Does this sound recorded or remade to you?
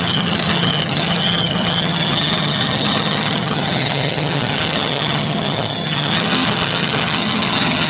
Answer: remade